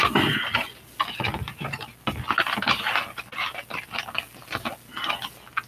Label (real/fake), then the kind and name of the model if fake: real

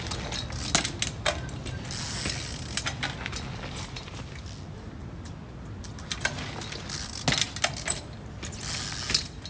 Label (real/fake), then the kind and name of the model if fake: real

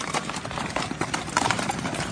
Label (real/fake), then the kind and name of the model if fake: fake, vocoder, BigVGAN v2